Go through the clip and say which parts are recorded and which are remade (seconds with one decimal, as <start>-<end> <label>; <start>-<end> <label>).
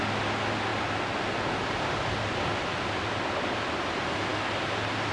0.0-5.1 recorded